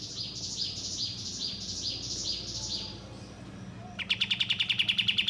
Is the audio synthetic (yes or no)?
no